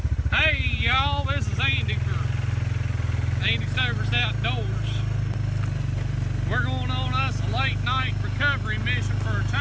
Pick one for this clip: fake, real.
real